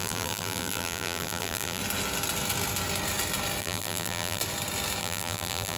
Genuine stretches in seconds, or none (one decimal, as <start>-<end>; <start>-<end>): 1.8-3.6; 4.4-5.0